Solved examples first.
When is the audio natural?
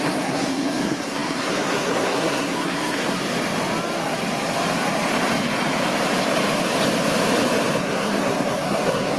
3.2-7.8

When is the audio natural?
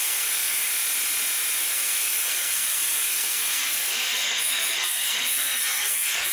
0.7-1.6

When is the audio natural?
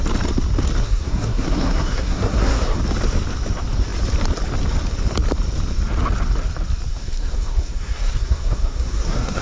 0.0-0.8; 2.8-6.9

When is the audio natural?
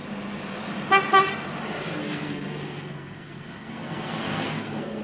0.0-2.0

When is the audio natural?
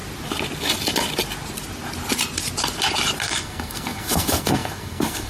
0.0-3.2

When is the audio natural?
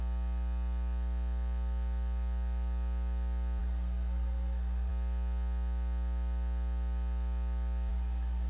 0.0-3.6; 4.9-7.9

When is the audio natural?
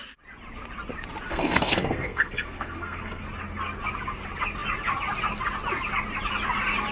0.0-1.3; 3.2-6.9